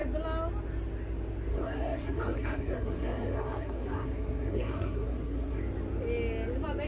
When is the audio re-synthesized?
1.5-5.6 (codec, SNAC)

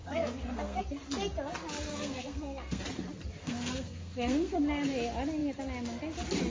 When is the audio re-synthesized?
0.0-0.8 (codec, SNAC); 1.9-2.8; 3.4-4.6

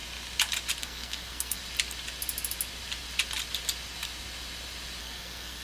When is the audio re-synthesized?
0.8-1.6 (codec, SNAC); 5.0-5.6

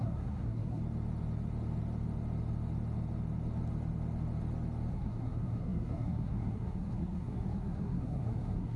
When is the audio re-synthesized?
0.0-0.8 (codec, SNAC); 4.9-8.8

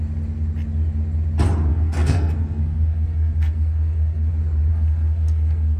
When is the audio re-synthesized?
1.7-4.3 (codec, SNAC); 4.7-5.8

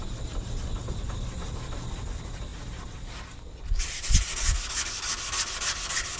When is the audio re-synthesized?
none

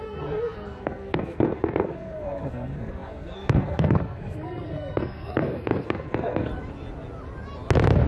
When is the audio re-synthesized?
0.0-6.5 (codec, SNAC)

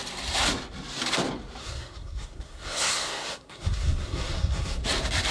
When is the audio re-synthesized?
1.6-4.8 (codec, SNAC)